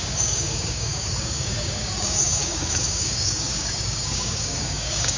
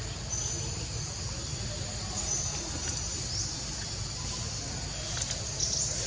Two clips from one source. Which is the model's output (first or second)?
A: first